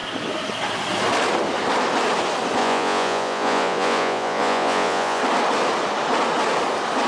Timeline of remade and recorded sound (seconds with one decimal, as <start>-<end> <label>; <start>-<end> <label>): 0.0-2.6 recorded; 2.6-5.2 remade; 5.2-7.1 recorded